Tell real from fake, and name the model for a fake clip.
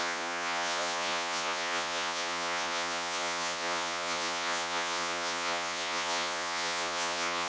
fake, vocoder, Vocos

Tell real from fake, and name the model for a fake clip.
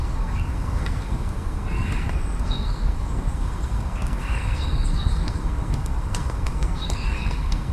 fake, codec, SNAC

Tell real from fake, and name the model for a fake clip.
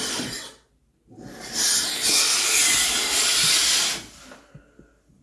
real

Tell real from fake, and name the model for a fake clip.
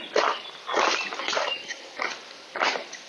fake, vocoder, BigVGAN v2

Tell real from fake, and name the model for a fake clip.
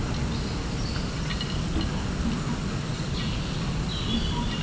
real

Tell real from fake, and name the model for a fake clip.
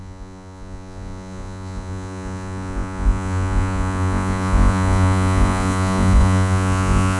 fake, vocoder, Vocos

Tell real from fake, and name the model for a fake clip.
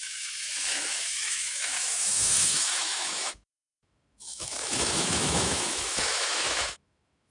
fake, autoencoder, DAC-VAE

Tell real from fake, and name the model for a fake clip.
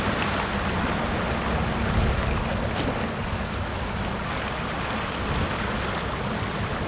real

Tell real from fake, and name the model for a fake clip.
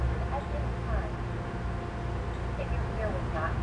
real